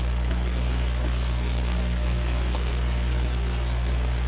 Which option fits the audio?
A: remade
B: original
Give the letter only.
A